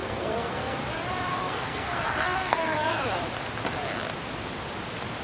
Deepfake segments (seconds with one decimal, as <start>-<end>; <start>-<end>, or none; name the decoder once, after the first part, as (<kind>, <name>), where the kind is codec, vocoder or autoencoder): 0.0-0.8 (codec, SNAC); 1.3-3.0